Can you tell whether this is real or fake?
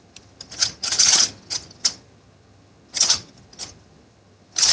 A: fake